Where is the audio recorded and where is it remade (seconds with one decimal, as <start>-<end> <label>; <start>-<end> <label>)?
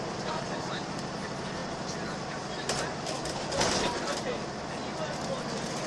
0.0-5.9 recorded